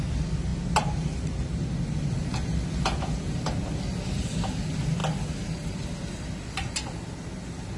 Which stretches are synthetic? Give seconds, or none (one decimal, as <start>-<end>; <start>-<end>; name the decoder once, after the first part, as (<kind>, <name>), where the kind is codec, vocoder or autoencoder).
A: none